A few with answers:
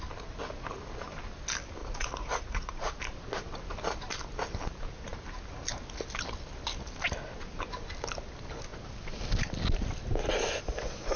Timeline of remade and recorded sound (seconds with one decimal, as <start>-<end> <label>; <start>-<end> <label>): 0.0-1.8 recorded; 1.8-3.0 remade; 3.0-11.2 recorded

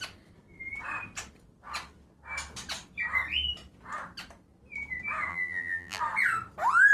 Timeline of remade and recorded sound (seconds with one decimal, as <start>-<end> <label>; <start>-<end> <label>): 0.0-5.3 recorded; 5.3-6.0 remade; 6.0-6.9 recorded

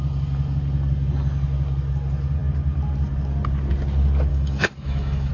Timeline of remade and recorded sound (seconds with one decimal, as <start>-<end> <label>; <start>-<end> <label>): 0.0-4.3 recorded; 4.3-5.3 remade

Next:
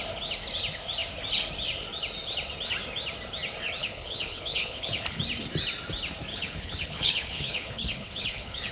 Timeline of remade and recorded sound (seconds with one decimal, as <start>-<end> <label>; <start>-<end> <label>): 0.0-3.8 recorded; 3.8-5.2 remade; 5.2-6.3 recorded; 6.3-8.7 remade

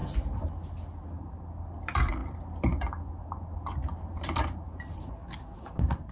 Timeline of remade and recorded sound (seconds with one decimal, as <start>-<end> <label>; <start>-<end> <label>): 0.0-5.2 recorded; 5.2-6.1 remade

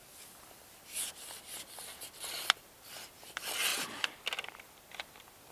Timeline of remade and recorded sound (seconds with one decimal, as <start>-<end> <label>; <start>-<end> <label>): 0.0-5.5 recorded

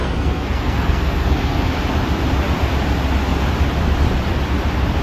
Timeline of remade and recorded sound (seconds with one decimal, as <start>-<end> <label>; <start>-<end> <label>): 0.0-1.8 remade; 1.8-5.0 recorded